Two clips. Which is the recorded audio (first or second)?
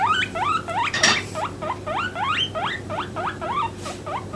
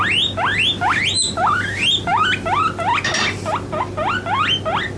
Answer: second